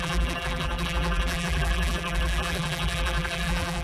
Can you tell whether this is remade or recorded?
remade